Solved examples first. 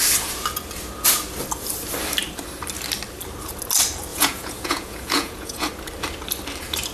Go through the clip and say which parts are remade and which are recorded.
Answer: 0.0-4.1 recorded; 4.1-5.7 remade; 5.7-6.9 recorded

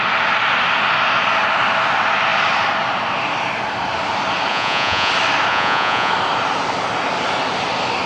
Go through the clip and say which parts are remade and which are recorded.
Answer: 0.0-4.5 recorded; 4.5-5.1 remade; 5.1-5.5 recorded; 5.5-6.1 remade; 6.1-8.1 recorded